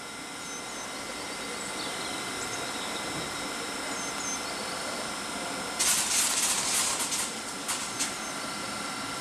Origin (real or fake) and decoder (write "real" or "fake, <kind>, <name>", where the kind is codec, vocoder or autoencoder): real